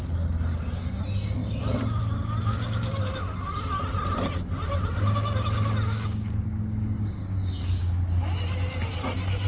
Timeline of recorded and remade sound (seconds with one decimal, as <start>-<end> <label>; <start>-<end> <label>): 0.0-0.5 recorded; 0.5-1.0 remade; 1.0-2.5 recorded; 2.5-3.1 remade; 3.1-5.9 recorded; 5.9-7.9 remade; 7.9-9.5 recorded